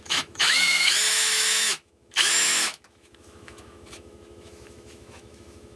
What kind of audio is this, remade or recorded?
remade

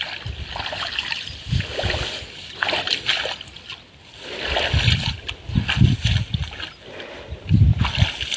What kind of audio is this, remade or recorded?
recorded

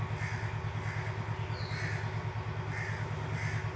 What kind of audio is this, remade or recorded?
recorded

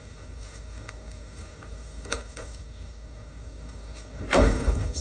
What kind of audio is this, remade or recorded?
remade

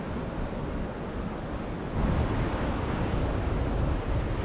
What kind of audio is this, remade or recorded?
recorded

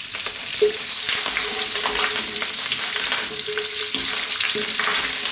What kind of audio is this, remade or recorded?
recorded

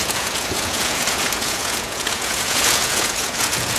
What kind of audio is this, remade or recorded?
remade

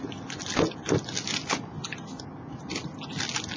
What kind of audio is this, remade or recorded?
recorded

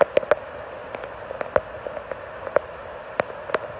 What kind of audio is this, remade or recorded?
recorded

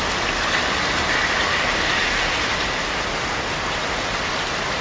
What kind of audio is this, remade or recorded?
recorded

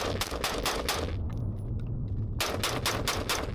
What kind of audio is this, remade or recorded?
recorded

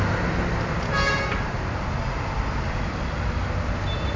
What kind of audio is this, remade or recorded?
recorded